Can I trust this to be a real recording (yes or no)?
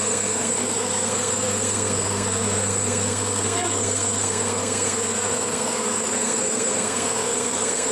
no